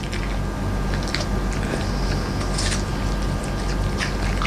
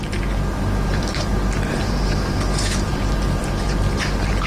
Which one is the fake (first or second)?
second